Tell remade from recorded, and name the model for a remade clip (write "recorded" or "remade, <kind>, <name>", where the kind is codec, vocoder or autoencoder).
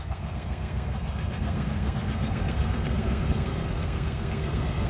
remade, codec, SNAC